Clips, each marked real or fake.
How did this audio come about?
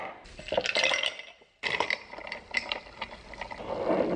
fake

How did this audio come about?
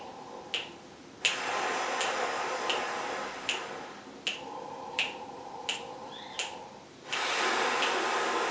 real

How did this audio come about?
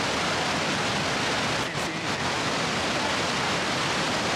real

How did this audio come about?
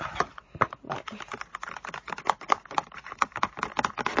fake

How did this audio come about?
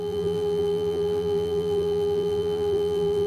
fake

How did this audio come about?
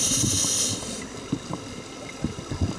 real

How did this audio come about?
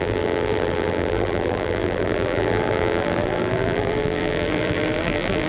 fake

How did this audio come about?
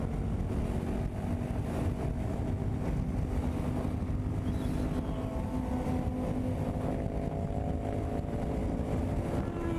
real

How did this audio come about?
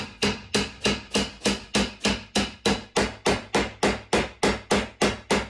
real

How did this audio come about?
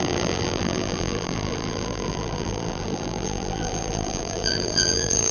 fake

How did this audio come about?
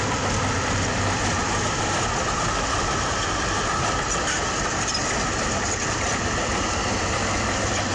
fake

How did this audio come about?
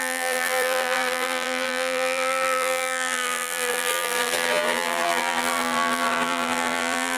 fake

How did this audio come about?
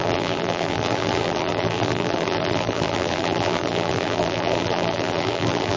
fake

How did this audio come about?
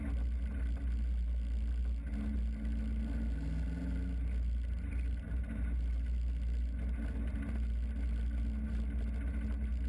real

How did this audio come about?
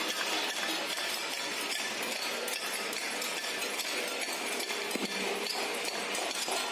real